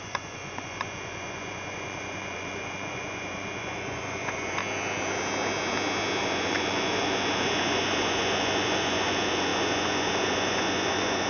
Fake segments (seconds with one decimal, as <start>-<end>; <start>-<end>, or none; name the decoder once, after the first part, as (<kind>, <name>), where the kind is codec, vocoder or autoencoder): 0.0-4.6 (vocoder, Vocos); 6.2-11.3